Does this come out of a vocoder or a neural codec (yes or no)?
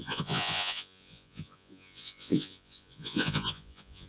yes